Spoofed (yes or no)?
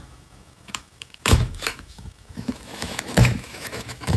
yes